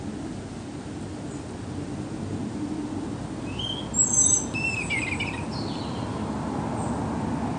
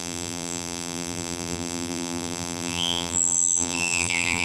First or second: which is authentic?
first